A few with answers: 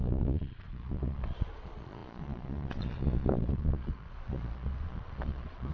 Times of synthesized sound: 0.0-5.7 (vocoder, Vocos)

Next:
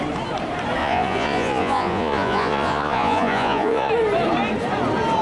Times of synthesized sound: 0.8-3.9 (vocoder, Vocos)

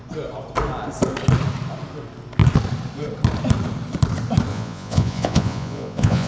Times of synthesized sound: 4.5-6.3 (vocoder, Vocos)